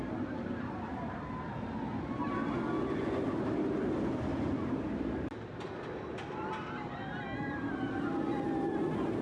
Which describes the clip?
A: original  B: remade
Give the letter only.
A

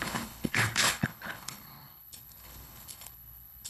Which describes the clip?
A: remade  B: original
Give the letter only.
A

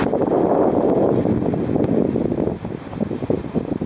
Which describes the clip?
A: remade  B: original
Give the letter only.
B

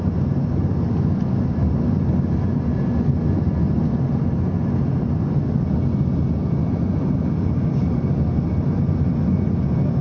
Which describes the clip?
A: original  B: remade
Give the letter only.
A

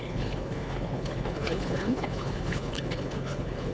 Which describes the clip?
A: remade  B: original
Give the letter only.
A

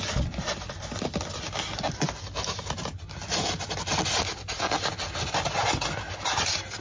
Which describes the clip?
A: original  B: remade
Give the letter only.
A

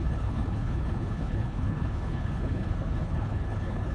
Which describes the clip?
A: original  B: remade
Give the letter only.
B